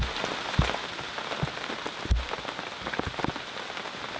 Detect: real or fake real